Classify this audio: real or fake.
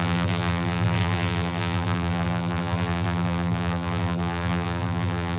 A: fake